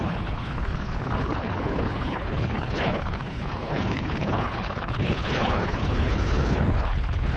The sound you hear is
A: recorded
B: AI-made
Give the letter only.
B